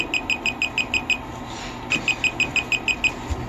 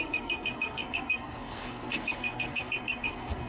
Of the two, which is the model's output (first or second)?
second